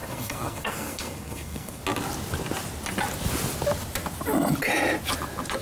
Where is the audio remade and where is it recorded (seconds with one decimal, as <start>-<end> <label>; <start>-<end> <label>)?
0.0-1.8 remade; 1.8-5.6 recorded